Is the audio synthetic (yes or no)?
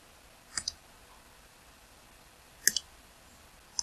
no